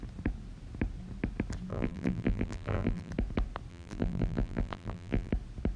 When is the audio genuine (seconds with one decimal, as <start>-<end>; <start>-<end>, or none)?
0.0-1.7; 3.1-3.7; 5.3-5.8